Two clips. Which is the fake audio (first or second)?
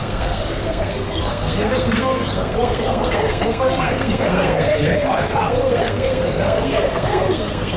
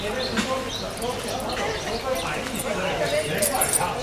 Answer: first